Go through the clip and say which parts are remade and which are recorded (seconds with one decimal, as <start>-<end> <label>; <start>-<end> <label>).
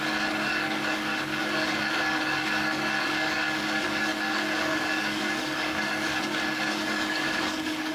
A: 0.0-7.9 remade